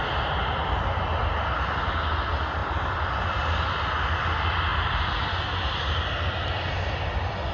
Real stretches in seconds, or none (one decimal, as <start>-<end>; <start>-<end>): 0.0-7.5

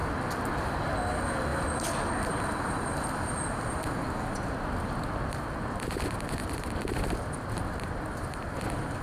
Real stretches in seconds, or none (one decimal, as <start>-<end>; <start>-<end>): 0.9-6.4; 8.5-9.0

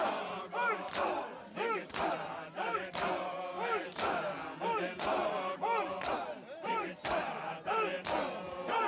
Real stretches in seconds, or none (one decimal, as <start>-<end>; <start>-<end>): 0.0-8.9

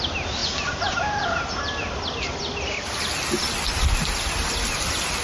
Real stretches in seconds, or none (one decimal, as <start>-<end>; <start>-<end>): 0.0-5.2